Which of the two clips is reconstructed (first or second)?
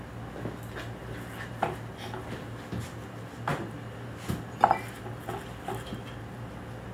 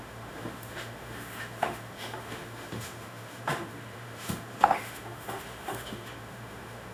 second